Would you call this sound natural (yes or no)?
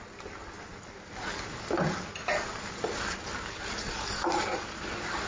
no